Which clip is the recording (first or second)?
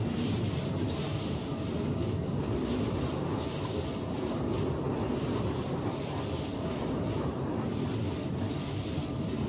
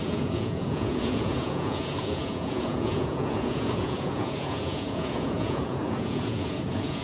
first